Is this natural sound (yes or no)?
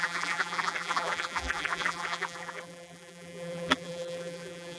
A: no